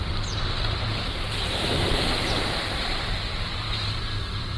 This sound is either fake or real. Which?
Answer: fake